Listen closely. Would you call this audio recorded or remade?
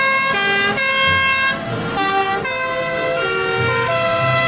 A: recorded